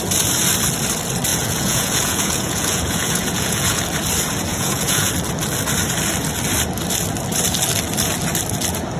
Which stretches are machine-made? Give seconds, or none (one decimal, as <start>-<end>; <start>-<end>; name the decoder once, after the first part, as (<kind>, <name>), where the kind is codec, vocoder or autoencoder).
1.3-3.8 (vocoder, Vocos); 4.5-5.1

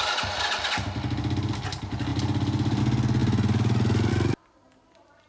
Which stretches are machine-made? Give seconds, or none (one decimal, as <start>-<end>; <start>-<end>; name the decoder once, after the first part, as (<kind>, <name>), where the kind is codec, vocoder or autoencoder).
2.1-2.8 (vocoder, BigVGAN v2)

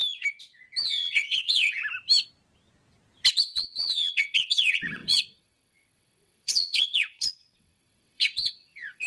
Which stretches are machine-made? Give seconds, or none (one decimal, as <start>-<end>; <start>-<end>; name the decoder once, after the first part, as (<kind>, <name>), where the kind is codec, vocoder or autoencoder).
0.8-1.8 (vocoder, WaveNeXt); 3.3-9.1

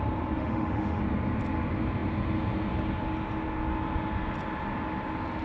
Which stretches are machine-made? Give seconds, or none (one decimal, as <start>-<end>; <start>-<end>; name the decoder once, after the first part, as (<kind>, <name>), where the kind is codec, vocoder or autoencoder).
0.4-1.0 (autoencoder, DAC-VAE)